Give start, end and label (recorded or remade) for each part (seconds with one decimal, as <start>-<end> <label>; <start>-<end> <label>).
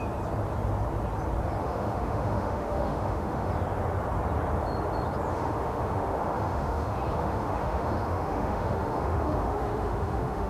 0.0-1.6 recorded; 1.6-3.5 remade; 3.5-5.3 recorded; 5.3-10.5 remade